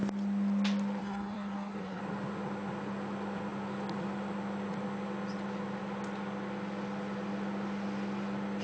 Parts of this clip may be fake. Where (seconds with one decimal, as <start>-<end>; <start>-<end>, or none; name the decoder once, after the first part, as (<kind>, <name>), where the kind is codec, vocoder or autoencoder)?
1.0-2.0 (codec, SNAC)